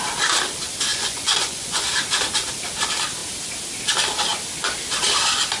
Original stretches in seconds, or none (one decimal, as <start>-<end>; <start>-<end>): 0.0-0.9; 1.9-5.6